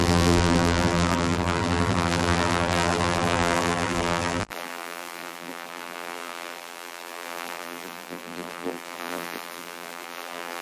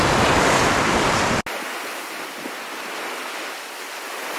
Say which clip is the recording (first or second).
second